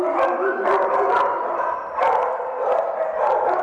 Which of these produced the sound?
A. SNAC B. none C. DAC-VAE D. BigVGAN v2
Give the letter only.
B